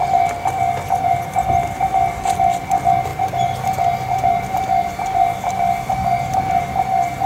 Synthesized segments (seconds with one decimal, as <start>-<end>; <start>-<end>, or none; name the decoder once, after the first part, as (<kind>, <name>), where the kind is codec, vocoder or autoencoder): none